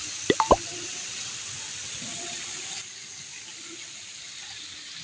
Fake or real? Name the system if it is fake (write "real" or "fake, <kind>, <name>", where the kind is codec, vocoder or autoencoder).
real